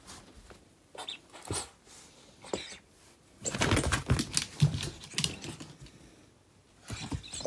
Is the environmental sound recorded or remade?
recorded